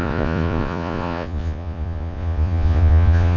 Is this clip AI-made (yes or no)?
yes